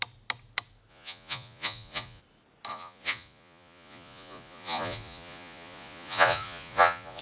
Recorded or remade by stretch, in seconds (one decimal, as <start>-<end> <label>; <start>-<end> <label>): 0.0-0.9 recorded; 0.9-2.2 remade; 2.2-2.7 recorded; 2.7-7.2 remade